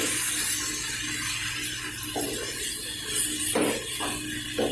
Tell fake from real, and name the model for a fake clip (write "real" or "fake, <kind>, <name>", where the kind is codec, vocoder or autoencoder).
real